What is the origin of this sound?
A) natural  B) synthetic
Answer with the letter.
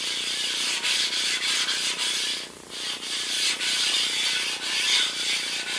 B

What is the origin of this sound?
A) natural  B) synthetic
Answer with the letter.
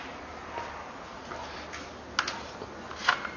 A